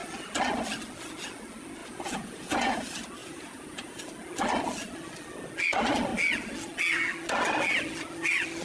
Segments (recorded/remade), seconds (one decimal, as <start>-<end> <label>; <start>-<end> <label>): 0.0-1.8 recorded; 1.8-2.8 remade; 2.8-3.2 recorded; 3.2-4.0 remade; 4.0-8.6 recorded